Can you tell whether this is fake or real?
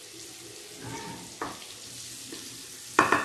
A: real